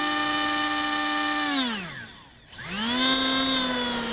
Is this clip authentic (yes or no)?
yes